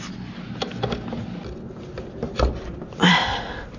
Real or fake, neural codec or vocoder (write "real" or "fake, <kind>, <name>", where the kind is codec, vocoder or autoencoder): real